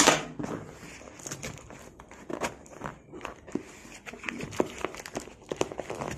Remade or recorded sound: recorded